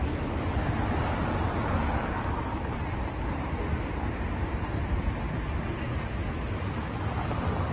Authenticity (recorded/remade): recorded